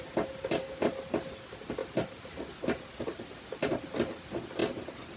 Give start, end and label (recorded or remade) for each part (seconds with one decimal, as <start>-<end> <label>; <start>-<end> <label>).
0.0-5.2 recorded